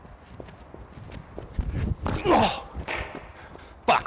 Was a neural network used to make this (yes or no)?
no